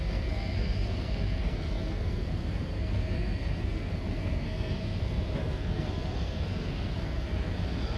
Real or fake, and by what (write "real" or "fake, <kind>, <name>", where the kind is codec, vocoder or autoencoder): fake, codec, SNAC